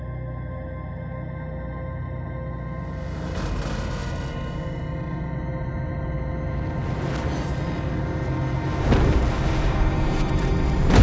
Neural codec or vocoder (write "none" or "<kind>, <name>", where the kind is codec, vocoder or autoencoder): none